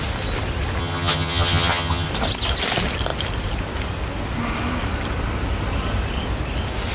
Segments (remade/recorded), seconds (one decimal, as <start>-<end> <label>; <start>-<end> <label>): 0.0-0.8 recorded; 0.8-2.1 remade; 2.1-6.9 recorded